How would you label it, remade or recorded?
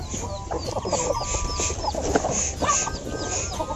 recorded